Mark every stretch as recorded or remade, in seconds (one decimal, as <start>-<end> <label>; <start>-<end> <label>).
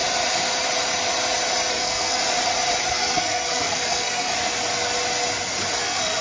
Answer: 0.0-1.7 recorded; 1.7-2.2 remade; 2.2-2.9 recorded; 2.9-4.3 remade; 4.3-5.8 recorded; 5.8-6.2 remade